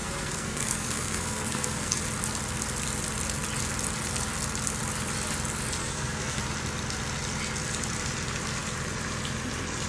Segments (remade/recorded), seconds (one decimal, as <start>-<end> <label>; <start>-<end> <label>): 0.0-2.0 remade; 2.0-5.8 recorded; 5.8-6.4 remade; 6.4-9.9 recorded